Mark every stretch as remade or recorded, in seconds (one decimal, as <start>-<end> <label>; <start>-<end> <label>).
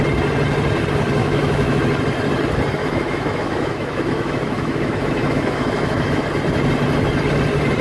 0.0-1.2 recorded; 1.2-1.8 remade; 1.8-2.8 recorded; 2.8-6.2 remade; 6.2-7.8 recorded